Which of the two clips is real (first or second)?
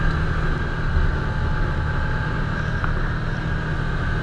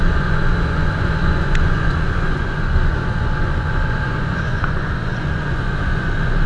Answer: first